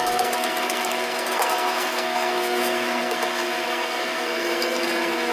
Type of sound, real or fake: fake